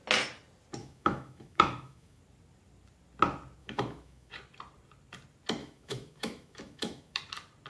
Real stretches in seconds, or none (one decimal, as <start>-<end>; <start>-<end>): 0.0-0.8; 2.2-3.6; 4.3-5.6; 7.2-7.7